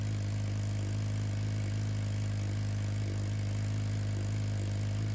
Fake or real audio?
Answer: real